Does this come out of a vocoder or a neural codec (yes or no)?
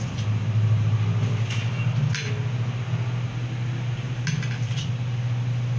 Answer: no